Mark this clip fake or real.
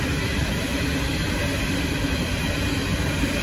real